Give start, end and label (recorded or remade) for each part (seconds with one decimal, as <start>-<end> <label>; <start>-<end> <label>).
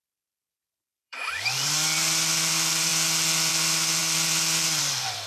0.0-2.9 remade; 2.9-3.5 recorded; 3.5-5.3 remade